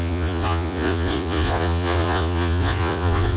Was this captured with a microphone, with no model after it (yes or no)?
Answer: no